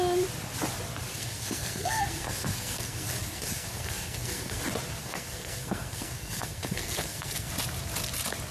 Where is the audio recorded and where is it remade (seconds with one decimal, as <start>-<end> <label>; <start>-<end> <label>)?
0.0-1.1 recorded; 1.1-4.6 remade; 4.6-5.0 recorded; 5.0-7.5 remade; 7.5-8.5 recorded